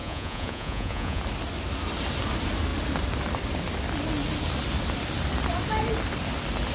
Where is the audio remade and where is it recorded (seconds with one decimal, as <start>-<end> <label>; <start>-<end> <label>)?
0.0-1.2 remade; 1.2-6.7 recorded